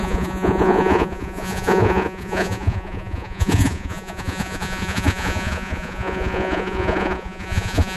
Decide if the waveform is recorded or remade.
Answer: remade